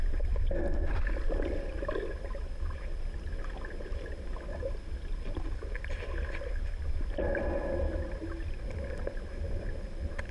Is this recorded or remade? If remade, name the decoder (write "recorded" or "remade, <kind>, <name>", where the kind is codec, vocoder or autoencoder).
recorded